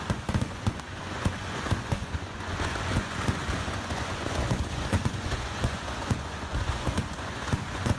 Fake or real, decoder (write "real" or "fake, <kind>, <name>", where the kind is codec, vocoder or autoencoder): fake, vocoder, Vocos